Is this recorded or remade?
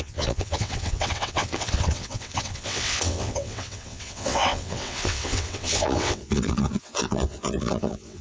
remade